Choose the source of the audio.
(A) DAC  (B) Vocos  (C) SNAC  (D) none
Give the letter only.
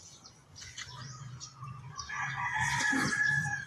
B